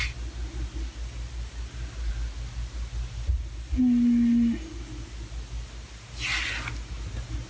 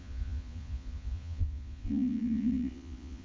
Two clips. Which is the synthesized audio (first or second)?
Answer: second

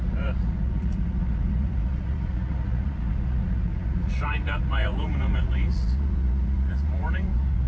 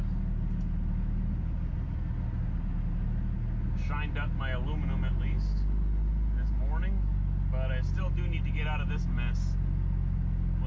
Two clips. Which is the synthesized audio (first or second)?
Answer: first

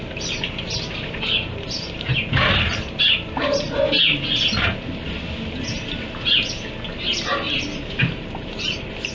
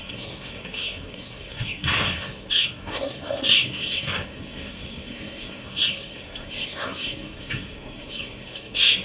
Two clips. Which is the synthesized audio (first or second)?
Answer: second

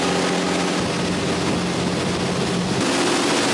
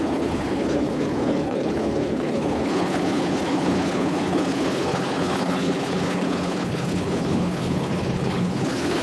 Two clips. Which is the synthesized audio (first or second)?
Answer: second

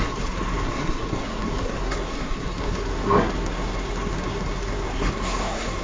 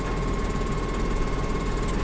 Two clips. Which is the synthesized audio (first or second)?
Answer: first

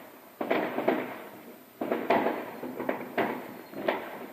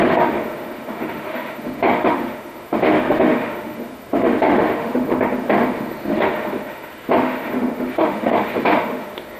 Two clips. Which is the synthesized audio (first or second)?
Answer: second